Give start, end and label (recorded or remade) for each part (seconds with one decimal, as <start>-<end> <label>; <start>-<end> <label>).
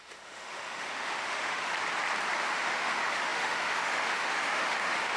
0.0-1.7 remade; 1.7-2.4 recorded; 2.4-5.2 remade